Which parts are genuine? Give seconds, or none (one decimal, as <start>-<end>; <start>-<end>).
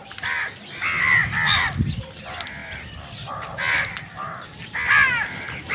0.0-5.7